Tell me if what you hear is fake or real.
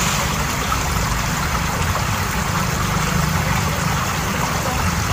real